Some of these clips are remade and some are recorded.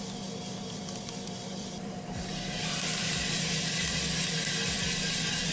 remade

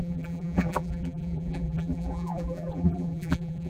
remade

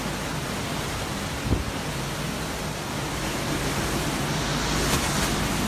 recorded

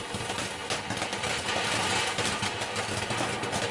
recorded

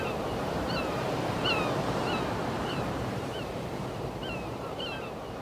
remade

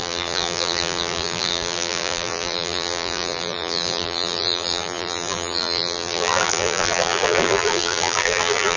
remade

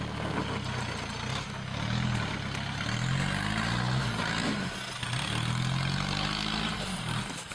recorded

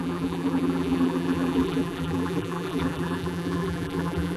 remade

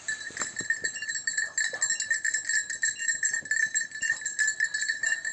recorded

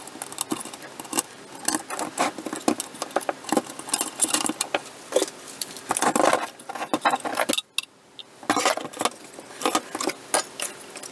recorded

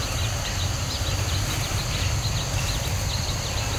recorded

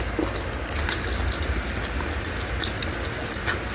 recorded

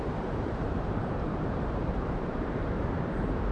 remade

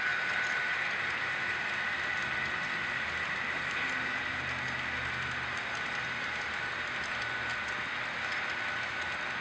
recorded